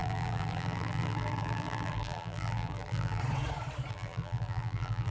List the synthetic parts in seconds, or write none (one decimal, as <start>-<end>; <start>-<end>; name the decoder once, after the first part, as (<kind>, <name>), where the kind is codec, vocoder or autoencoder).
0.0-3.2 (vocoder, BigVGAN v2); 3.9-5.1